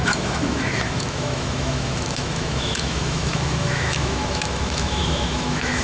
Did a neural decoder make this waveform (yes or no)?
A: yes